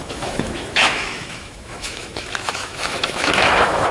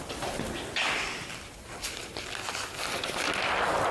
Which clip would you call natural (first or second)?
second